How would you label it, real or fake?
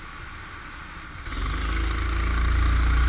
real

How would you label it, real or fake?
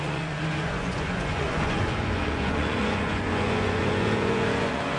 fake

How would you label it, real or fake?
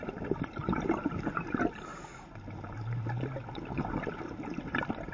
real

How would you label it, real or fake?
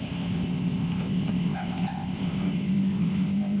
fake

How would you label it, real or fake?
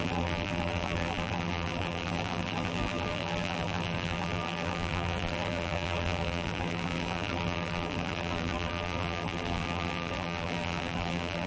fake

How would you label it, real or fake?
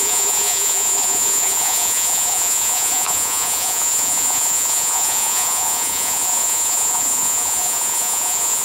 fake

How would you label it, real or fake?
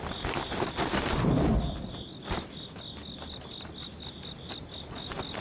real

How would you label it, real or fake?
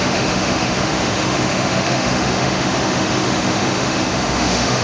fake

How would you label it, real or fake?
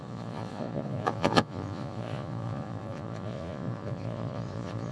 fake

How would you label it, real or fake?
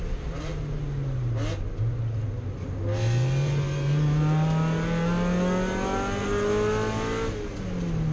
real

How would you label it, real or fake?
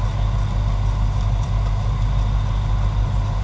real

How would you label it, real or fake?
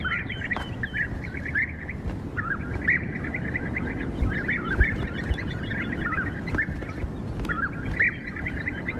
real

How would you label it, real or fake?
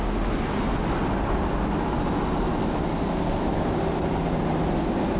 real